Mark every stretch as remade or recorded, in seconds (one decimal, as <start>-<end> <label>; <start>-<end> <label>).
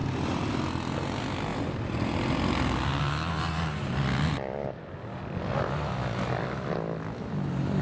0.0-7.8 recorded